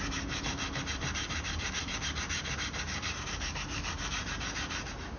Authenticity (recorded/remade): remade